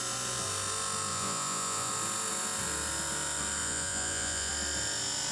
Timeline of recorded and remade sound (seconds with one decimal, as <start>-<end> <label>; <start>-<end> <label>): 0.0-1.1 recorded; 1.1-1.9 remade; 1.9-3.6 recorded; 3.6-4.5 remade; 4.5-5.3 recorded